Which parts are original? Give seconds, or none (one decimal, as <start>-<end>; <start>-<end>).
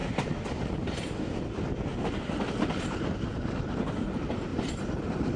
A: 0.0-4.5